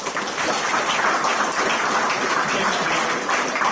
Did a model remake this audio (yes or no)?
no